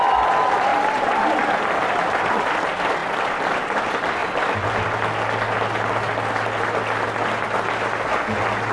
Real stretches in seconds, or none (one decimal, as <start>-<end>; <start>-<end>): 0.0-0.7; 2.0-3.0; 3.8-8.7